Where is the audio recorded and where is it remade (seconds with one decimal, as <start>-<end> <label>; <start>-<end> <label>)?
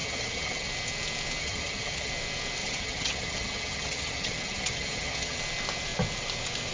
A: 0.0-0.7 remade; 0.7-1.4 recorded; 1.4-2.1 remade; 2.1-2.6 recorded; 2.6-5.4 remade; 5.4-6.7 recorded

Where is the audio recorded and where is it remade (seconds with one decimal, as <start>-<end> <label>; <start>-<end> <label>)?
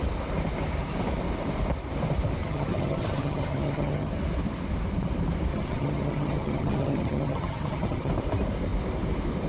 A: 0.0-2.4 recorded; 2.4-4.1 remade; 4.1-5.5 recorded; 5.5-8.1 remade; 8.1-9.5 recorded